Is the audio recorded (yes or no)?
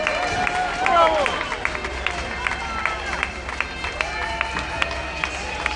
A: yes